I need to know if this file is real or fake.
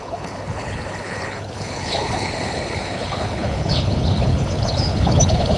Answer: fake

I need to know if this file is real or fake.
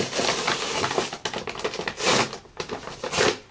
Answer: real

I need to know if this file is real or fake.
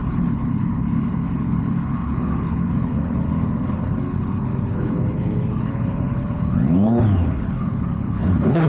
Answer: fake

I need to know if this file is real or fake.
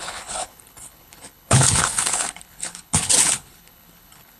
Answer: fake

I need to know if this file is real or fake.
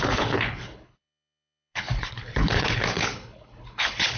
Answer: fake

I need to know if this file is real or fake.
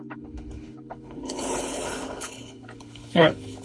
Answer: fake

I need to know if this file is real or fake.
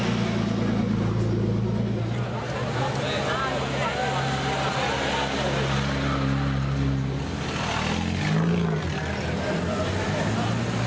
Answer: real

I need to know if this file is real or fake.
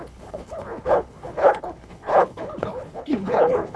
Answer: fake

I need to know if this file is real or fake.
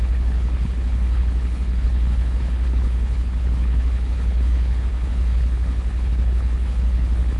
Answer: fake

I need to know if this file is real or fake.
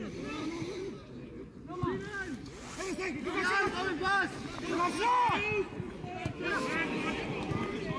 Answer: real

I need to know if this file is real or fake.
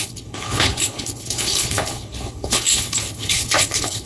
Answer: fake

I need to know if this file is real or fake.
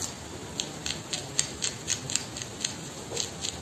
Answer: real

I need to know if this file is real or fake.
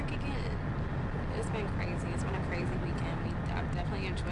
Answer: real